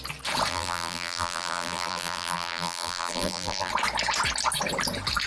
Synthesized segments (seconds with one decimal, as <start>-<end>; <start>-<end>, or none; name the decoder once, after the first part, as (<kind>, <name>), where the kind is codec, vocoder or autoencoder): 0.5-3.7 (vocoder, BigVGAN v2)